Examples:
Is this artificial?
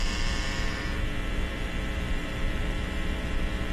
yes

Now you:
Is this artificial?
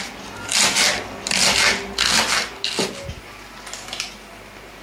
no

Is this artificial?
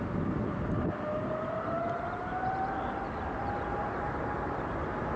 no